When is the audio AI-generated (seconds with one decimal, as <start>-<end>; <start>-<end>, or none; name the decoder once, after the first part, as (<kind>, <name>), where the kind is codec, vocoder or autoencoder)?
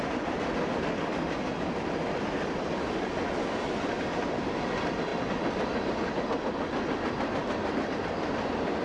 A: none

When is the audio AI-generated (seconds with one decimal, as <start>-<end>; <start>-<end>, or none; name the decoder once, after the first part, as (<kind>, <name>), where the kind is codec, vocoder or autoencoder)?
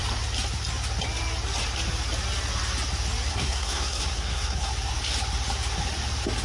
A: 3.3-4.7 (codec, SNAC)